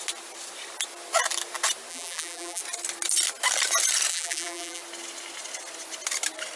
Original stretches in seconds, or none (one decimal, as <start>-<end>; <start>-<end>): 0.0-1.9; 2.6-4.1; 4.8-6.6